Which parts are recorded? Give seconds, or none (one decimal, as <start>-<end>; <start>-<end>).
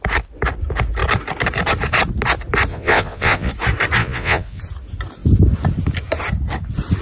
0.0-2.7; 3.5-4.0; 4.6-7.0